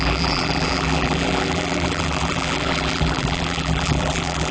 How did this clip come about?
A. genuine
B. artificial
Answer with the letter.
B